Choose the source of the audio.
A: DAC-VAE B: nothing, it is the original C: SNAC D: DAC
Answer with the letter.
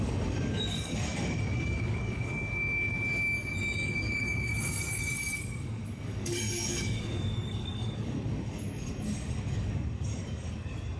D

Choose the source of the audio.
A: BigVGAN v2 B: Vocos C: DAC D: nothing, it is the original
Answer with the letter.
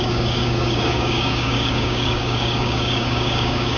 C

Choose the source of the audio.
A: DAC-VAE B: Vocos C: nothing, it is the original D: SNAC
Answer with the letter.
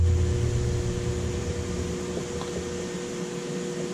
C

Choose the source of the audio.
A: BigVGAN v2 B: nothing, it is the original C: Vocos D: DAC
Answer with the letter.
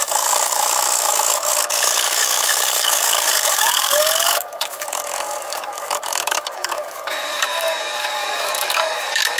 D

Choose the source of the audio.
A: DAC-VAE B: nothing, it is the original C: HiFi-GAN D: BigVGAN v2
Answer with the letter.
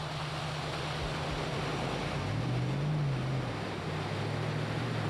B